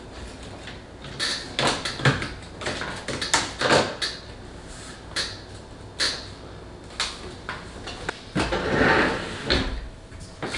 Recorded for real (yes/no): yes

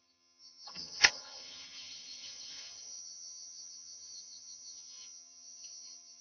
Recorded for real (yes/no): no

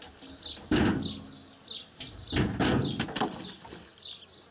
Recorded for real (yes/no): yes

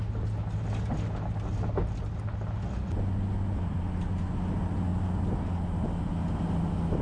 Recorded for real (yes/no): yes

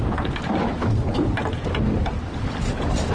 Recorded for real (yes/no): yes